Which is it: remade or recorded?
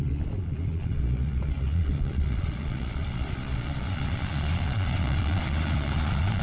remade